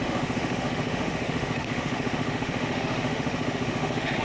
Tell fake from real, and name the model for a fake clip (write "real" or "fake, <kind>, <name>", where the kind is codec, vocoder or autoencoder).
fake, autoencoder, DAC-VAE